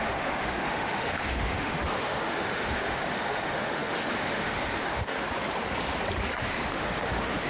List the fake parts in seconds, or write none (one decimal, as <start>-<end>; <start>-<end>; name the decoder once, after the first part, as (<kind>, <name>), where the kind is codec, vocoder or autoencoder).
0.0-5.1 (autoencoder, DAC-VAE); 6.4-7.5